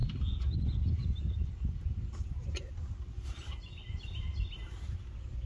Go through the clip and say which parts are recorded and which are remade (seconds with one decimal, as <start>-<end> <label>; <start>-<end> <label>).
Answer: 0.0-5.5 recorded